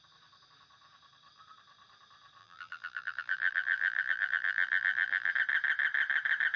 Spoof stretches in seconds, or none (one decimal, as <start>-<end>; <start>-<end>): 2.4-5.3